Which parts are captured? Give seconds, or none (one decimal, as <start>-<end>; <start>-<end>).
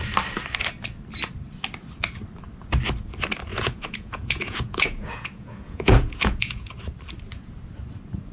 0.0-3.5; 6.7-8.3